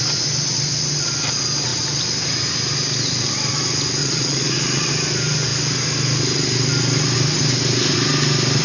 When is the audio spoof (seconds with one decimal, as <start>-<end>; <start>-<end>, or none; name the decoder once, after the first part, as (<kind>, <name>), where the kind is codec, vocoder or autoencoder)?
4.0-4.9 (vocoder, Vocos)